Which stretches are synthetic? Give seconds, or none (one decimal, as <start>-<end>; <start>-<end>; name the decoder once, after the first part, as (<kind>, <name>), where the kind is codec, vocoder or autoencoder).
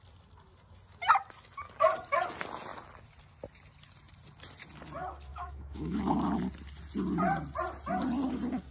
5.3-6.0 (autoencoder, DAC-VAE)